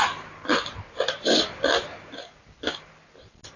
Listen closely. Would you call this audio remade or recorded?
recorded